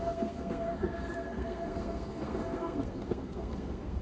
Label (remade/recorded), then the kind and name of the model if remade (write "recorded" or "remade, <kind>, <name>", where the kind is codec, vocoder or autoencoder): remade, codec, SNAC